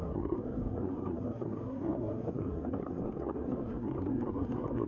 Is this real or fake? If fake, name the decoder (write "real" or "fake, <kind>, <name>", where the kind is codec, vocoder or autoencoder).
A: fake, codec, SNAC